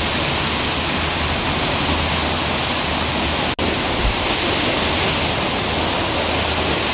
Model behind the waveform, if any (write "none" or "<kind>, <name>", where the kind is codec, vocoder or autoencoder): none